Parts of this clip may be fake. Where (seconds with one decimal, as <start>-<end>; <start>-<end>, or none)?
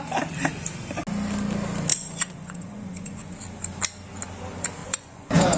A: 1.9-3.3; 4.8-5.6